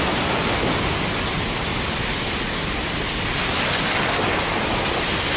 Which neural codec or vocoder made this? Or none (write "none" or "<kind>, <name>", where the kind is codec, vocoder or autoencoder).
none